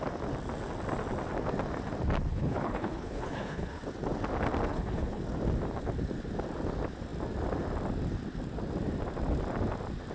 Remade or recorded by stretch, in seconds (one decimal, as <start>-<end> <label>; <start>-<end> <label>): 0.0-2.3 recorded; 2.3-3.8 remade; 3.8-4.7 recorded; 4.7-5.2 remade; 5.2-10.1 recorded